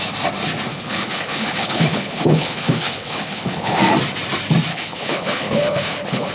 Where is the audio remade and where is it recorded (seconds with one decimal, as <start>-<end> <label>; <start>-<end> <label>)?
0.0-0.7 recorded; 0.7-3.8 remade; 3.8-4.7 recorded; 4.7-6.3 remade